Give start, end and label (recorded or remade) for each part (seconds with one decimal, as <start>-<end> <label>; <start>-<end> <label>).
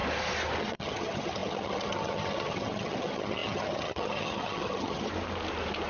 0.0-0.6 recorded; 0.6-5.1 remade; 5.1-5.9 recorded